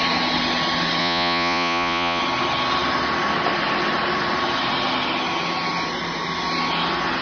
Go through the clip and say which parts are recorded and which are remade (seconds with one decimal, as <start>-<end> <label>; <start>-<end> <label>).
0.0-1.0 recorded; 1.0-2.2 remade; 2.2-7.2 recorded

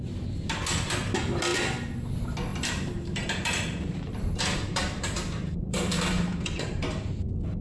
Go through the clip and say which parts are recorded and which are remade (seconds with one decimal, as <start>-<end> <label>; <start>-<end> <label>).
0.0-2.5 recorded; 2.5-7.1 remade; 7.1-7.6 recorded

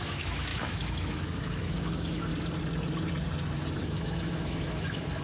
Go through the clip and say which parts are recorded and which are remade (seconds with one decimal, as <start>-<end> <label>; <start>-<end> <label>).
0.0-2.3 remade; 2.3-3.8 recorded; 3.8-5.2 remade

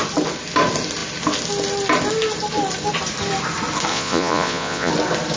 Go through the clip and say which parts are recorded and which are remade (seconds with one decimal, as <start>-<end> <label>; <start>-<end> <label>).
0.0-3.9 recorded; 3.9-4.9 remade; 4.9-5.4 recorded

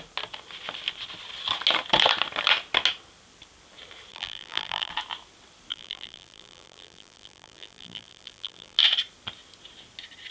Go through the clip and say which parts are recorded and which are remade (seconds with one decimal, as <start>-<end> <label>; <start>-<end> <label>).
0.0-4.1 recorded; 4.1-4.9 remade; 4.9-5.7 recorded; 5.7-8.8 remade; 8.8-10.3 recorded

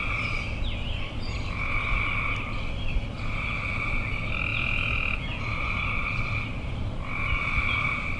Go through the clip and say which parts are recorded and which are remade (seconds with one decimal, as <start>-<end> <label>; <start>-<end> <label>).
0.0-4.5 recorded; 4.5-5.4 remade; 5.4-8.2 recorded

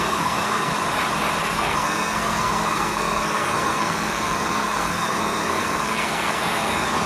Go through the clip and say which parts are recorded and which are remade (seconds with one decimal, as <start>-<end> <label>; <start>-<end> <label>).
0.0-0.7 remade; 0.7-1.4 recorded; 1.4-7.1 remade